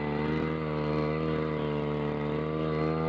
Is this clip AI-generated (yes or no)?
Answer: no